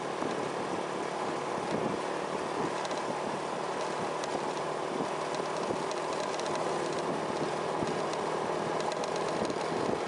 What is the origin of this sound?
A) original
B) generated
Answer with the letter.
A